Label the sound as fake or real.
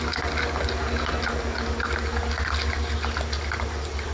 real